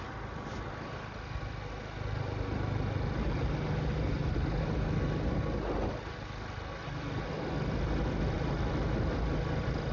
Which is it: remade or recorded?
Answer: recorded